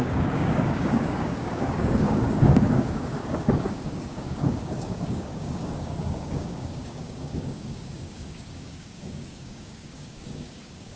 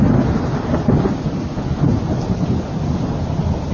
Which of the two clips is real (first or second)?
second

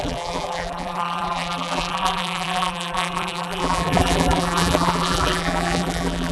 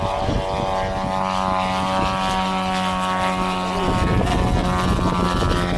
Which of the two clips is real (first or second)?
second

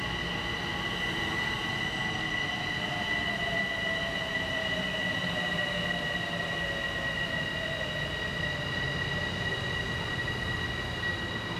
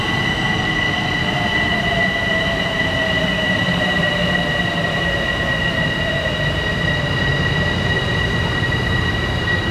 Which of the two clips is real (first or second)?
first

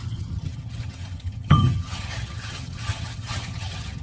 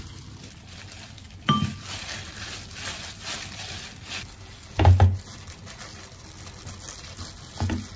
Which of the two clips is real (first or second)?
second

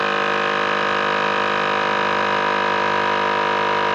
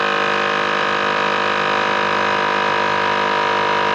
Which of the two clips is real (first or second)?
second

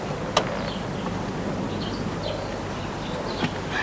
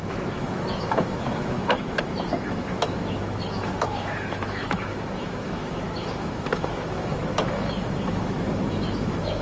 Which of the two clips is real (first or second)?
first